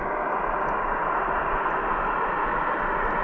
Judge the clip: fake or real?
real